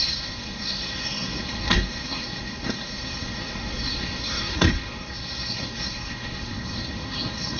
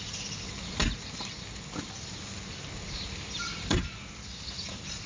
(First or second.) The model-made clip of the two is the first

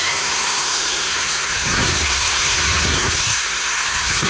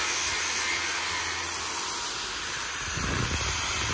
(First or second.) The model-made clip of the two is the first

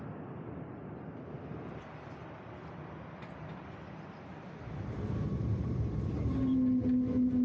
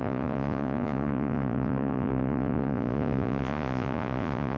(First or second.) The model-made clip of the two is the second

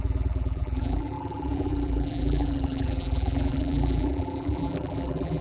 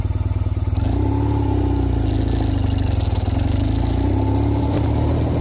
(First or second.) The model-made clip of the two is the first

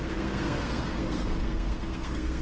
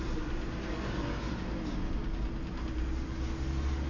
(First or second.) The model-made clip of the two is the first